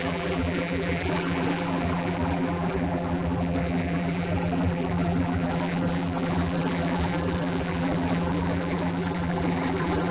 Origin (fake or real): fake